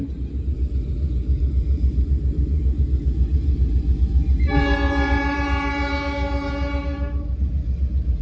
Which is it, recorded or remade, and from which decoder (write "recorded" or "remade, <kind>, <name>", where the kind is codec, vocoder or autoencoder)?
remade, vocoder, BigVGAN v2